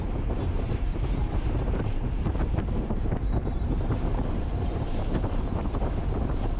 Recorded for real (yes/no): no